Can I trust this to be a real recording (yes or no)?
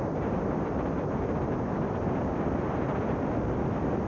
yes